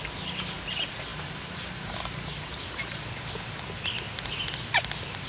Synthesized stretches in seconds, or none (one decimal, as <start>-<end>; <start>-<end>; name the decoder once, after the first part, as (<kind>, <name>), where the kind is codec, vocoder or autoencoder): none